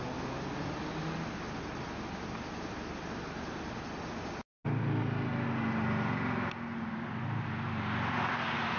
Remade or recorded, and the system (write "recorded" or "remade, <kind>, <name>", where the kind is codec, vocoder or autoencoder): recorded